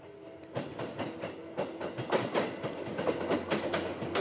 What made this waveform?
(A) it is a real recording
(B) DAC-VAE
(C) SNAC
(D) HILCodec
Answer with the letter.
A